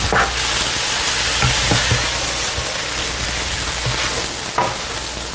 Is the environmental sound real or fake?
real